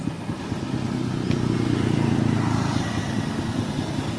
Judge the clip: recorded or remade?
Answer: recorded